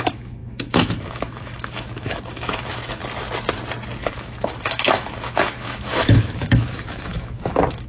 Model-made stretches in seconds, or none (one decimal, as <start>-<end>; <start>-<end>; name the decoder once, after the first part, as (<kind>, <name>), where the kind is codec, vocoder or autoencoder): 0.0-3.0 (autoencoder, DAC-VAE); 4.0-7.9